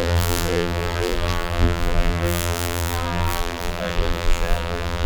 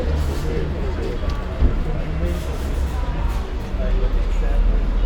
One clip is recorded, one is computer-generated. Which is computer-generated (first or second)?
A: first